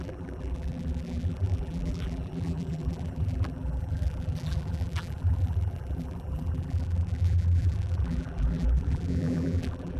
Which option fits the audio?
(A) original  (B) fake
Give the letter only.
B